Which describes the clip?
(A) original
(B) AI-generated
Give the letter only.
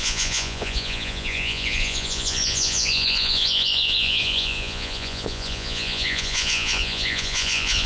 B